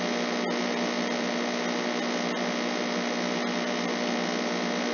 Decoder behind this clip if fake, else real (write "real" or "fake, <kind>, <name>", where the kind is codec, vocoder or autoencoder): real